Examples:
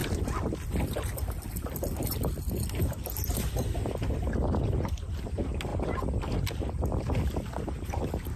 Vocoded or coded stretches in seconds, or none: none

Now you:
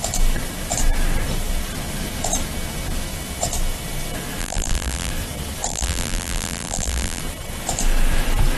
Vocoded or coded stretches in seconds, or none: 4.4-5.1; 5.7-7.2

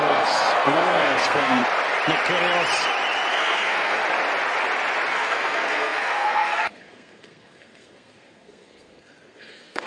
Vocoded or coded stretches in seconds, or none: 0.0-1.6; 3.3-4.0; 5.1-9.9

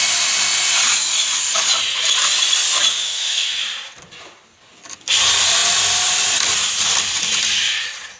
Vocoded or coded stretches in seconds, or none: 2.9-3.6

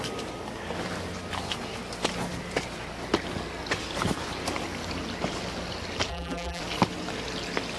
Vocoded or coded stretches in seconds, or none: 6.1-6.6

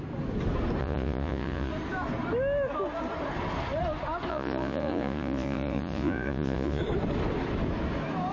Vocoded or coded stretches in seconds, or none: 0.8-1.7; 4.3-6.8

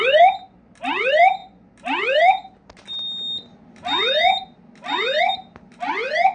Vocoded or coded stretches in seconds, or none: none

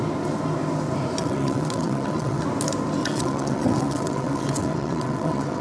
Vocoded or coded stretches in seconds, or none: 1.2-2.4; 3.0-5.6